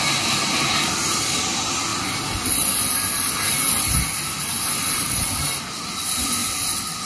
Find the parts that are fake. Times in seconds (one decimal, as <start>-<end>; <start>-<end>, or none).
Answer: none